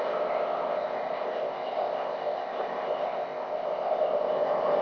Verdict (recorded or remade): remade